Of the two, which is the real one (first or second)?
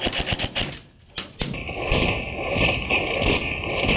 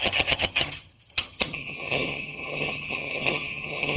first